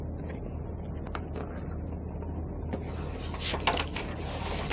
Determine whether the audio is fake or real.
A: real